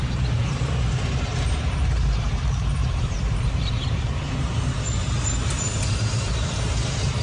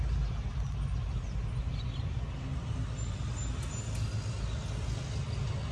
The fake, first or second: first